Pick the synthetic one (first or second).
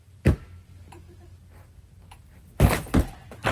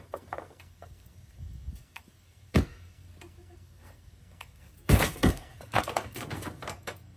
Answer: second